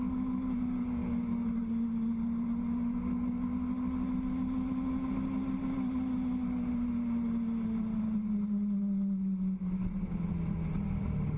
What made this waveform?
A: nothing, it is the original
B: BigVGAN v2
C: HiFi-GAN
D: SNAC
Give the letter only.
A